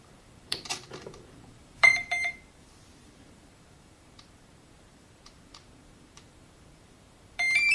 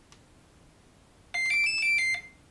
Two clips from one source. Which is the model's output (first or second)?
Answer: first